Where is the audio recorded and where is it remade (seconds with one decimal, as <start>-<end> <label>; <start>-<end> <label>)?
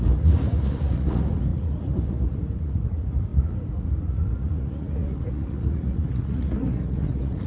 0.0-7.5 remade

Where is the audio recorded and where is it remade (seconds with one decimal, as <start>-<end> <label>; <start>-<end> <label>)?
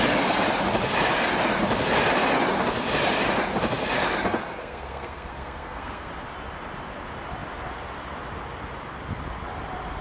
0.0-4.6 recorded; 4.6-6.1 remade; 6.1-10.0 recorded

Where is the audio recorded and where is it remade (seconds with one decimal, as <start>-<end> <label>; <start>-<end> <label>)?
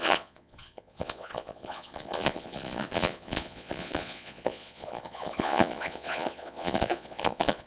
0.0-7.7 remade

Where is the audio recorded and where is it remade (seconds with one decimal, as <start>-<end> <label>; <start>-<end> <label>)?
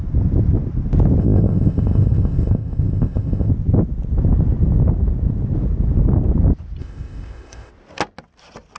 0.0-1.2 recorded; 1.2-3.5 remade; 3.5-6.8 recorded; 6.8-7.7 remade; 7.7-8.8 recorded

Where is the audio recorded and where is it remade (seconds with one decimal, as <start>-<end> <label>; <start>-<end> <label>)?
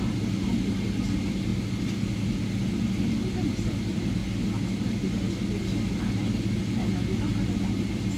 0.0-8.2 recorded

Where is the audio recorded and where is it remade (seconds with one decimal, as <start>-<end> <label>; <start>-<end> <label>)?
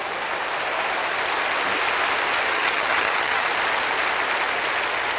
0.0-2.5 recorded; 2.5-3.5 remade; 3.5-5.2 recorded